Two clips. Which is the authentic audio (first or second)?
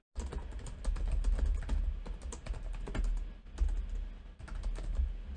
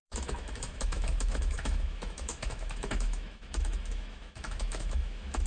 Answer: first